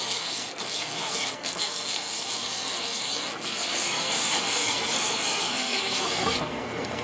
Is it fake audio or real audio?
fake